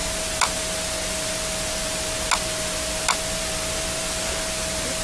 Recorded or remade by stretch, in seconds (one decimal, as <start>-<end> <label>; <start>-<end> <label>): 0.0-5.0 recorded